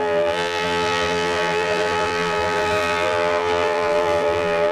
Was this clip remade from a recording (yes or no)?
yes